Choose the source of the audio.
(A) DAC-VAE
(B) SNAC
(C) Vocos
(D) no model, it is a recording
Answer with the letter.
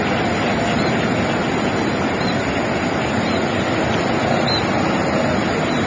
D